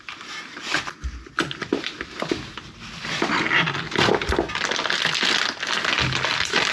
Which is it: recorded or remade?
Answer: recorded